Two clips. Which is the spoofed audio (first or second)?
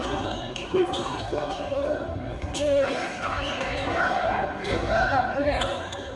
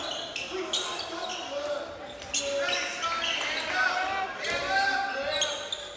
first